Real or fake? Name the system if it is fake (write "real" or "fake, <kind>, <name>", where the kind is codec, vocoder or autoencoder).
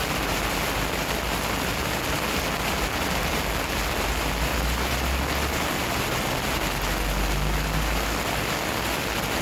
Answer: real